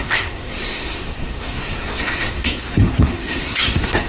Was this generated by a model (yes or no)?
yes